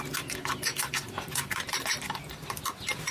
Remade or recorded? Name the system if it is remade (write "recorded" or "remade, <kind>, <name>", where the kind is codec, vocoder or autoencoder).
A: recorded